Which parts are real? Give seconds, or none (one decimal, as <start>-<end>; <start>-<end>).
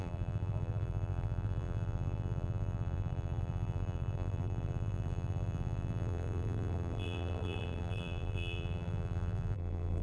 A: none